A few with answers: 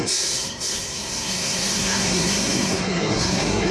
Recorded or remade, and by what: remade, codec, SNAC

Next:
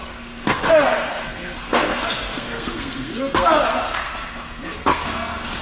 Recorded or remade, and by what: remade, codec, SNAC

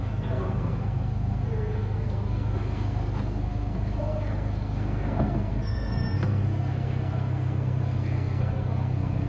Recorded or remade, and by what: remade, codec, SNAC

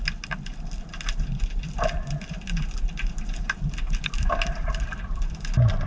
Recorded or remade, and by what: recorded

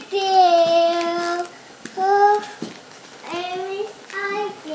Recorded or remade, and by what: recorded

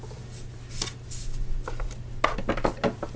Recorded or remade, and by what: recorded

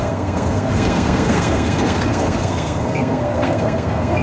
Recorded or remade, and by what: remade, codec, SNAC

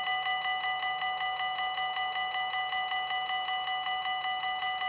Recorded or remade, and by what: recorded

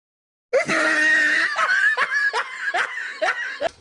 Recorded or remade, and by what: recorded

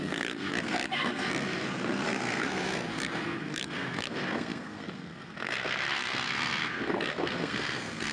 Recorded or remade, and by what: remade, codec, SNAC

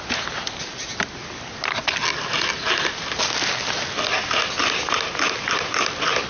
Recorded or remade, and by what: recorded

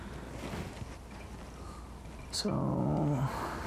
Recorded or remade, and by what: recorded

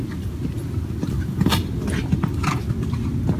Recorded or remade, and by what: recorded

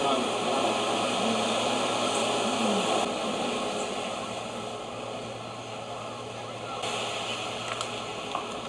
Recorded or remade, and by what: recorded